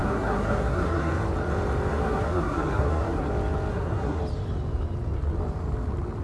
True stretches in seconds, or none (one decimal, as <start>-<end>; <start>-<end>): 1.1-1.9; 3.3-3.7; 4.2-6.2